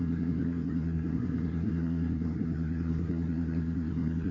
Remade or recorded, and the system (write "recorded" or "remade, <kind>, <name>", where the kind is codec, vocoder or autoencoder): remade, codec, SNAC